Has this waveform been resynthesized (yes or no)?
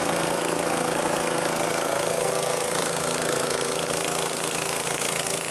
yes